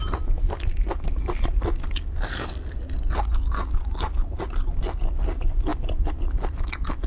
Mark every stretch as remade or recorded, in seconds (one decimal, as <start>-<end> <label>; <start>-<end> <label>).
0.0-7.1 recorded